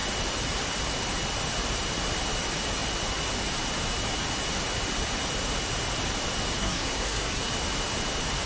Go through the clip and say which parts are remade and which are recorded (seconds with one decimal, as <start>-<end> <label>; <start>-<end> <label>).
0.0-6.6 recorded; 6.6-7.5 remade; 7.5-8.5 recorded